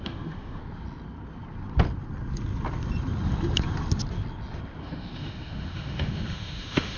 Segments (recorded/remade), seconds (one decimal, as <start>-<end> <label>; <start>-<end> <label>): 0.0-0.6 remade; 0.6-4.8 recorded; 4.8-7.0 remade